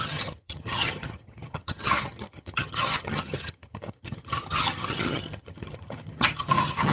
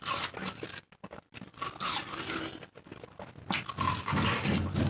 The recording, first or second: second